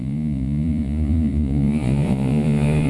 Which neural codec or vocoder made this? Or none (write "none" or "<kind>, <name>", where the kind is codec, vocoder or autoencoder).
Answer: vocoder, Vocos